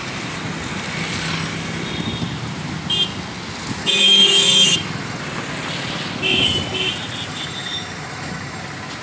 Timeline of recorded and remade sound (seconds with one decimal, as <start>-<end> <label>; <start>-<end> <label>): 0.0-3.8 recorded; 3.8-5.2 remade; 5.2-7.3 recorded; 7.3-8.6 remade; 8.6-9.0 recorded